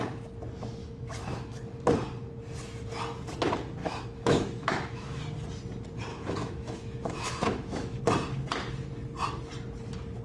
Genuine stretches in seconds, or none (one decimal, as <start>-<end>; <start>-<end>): 0.0-0.8; 1.6-3.8; 5.2-6.1; 8.0-10.2